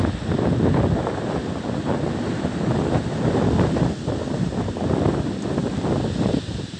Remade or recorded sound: recorded